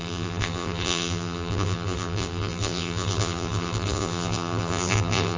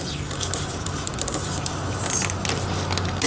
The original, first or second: second